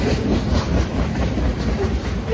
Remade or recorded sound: recorded